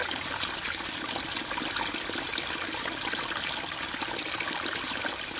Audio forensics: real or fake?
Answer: real